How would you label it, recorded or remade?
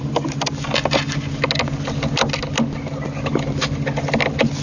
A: recorded